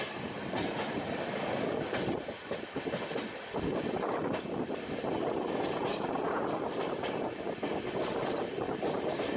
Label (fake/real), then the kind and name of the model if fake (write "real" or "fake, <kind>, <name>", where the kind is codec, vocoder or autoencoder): real